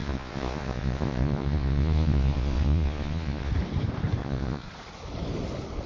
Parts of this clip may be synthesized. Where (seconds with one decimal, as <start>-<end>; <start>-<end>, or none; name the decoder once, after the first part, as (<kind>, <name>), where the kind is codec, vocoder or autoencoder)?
0.0-3.5 (vocoder, Vocos); 4.2-4.7